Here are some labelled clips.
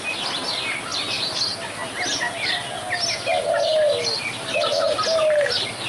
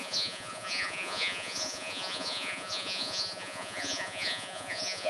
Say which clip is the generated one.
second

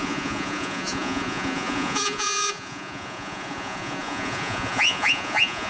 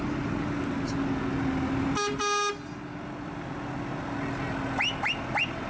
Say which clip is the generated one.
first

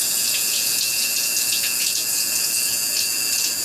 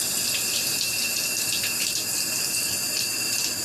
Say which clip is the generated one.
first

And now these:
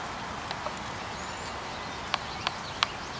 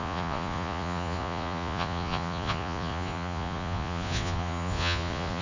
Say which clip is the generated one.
second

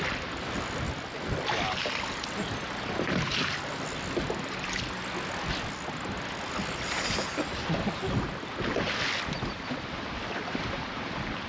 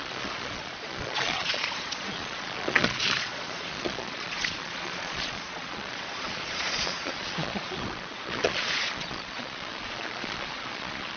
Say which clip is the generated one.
second